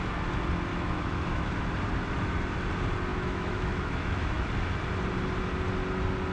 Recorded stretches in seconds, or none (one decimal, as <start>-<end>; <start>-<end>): 0.0-0.7; 1.5-3.1; 4.5-6.3